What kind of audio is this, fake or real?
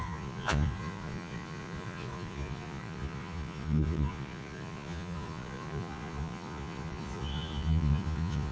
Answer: fake